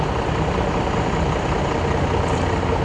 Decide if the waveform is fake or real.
real